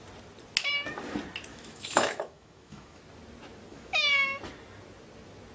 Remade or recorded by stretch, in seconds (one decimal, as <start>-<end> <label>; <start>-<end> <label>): 0.0-1.5 recorded; 1.5-3.0 remade; 3.0-3.7 recorded; 3.7-4.4 remade; 4.4-5.5 recorded